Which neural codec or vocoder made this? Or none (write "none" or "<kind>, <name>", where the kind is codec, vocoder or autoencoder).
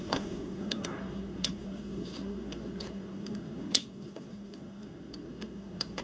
codec, SNAC